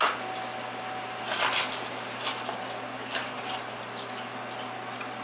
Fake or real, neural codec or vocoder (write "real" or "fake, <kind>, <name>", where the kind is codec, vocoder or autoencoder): real